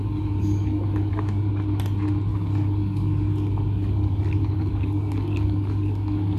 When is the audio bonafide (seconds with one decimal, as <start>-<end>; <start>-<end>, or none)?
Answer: 1.5-2.3